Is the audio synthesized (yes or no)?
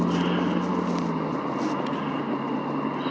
no